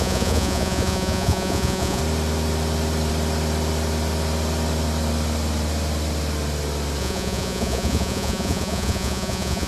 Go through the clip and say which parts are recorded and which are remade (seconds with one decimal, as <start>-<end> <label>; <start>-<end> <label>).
0.0-2.0 remade; 2.0-7.0 recorded; 7.0-9.7 remade